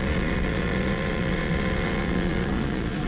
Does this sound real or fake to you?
fake